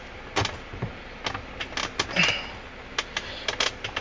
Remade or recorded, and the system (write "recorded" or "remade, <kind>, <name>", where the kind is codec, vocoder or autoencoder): recorded